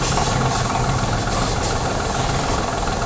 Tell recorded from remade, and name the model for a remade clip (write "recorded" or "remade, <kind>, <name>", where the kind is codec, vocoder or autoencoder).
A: recorded